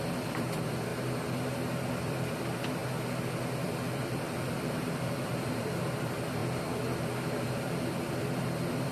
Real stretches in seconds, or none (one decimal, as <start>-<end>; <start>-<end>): 0.9-1.9; 2.8-3.6